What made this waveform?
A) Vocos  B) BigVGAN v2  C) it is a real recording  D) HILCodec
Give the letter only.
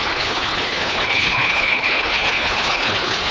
D